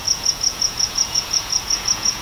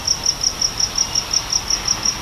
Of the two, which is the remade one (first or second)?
first